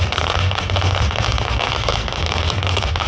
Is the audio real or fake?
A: fake